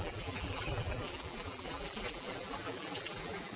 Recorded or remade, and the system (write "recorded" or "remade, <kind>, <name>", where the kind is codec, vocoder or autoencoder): remade, vocoder, BigVGAN v2